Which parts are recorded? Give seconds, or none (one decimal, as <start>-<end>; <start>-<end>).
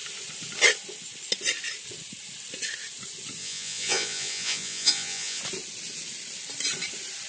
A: 0.0-3.4; 5.4-7.3